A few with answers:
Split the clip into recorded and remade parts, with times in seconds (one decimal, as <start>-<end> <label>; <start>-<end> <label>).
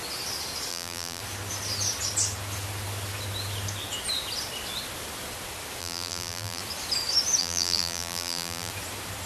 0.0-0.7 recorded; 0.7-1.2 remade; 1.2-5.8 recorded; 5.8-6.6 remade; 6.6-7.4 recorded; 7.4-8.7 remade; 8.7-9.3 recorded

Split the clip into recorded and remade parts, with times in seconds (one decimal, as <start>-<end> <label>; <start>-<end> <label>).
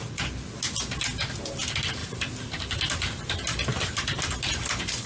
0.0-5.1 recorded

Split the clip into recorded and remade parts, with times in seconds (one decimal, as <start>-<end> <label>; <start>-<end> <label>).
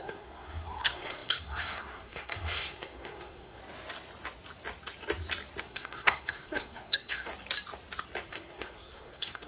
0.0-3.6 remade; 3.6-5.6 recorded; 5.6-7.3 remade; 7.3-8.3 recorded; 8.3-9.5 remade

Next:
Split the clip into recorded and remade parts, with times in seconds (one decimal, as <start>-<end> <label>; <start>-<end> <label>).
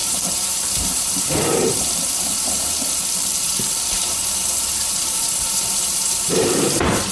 0.0-3.0 remade; 3.0-3.4 recorded; 3.4-7.1 remade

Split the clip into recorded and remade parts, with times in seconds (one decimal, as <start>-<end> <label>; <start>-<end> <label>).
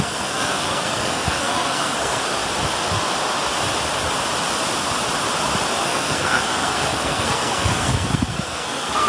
0.0-2.4 remade; 2.4-5.8 recorded; 5.8-9.1 remade